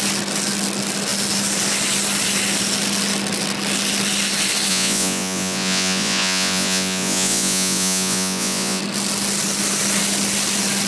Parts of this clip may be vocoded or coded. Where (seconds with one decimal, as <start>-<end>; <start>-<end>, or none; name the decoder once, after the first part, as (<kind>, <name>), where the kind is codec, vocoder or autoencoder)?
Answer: 4.7-8.8 (vocoder, Vocos)